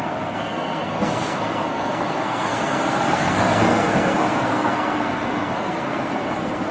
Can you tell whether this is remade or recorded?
remade